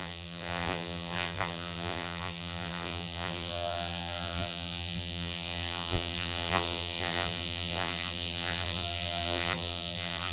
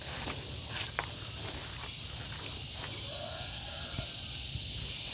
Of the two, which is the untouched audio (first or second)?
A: second